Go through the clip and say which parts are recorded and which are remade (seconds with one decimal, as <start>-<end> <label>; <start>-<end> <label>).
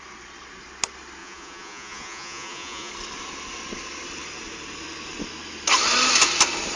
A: 0.0-1.2 recorded; 1.2-2.9 remade; 2.9-6.8 recorded